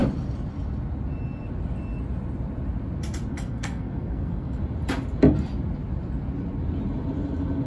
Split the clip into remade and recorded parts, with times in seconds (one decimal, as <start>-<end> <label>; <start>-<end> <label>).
0.0-3.3 recorded; 3.3-4.6 remade; 4.6-7.7 recorded